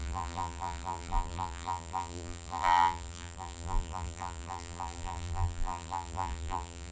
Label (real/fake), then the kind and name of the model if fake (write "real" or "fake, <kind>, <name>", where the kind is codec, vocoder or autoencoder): fake, vocoder, BigVGAN v2